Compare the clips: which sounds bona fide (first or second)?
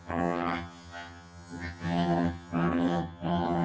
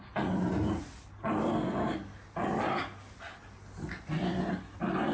second